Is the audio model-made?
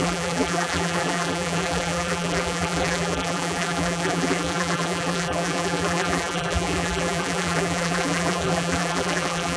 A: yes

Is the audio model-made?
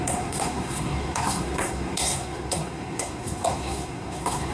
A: yes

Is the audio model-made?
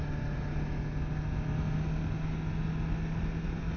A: no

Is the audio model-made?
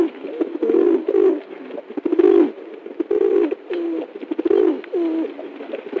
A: no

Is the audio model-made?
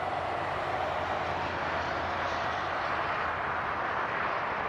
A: yes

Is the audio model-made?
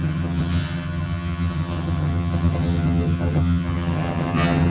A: yes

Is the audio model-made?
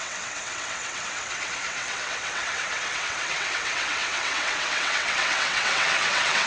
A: yes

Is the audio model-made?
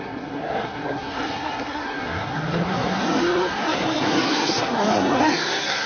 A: yes